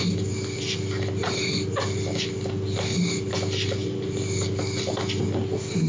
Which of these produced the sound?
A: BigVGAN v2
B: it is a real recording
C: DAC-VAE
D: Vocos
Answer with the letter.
B